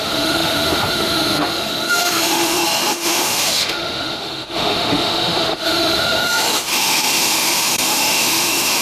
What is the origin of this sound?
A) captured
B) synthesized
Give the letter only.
B